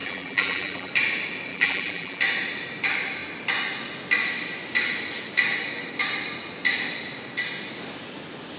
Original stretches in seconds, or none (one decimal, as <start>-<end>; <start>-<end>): 0.9-1.5; 2.2-8.6